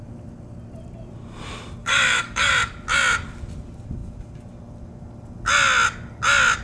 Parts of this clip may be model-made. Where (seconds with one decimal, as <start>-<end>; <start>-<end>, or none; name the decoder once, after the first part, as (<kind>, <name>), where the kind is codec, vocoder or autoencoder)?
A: 1.8-2.5 (codec, DAC)